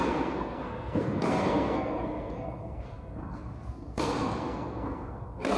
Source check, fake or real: fake